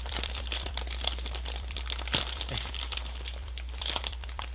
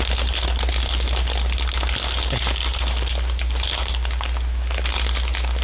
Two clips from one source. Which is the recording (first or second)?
second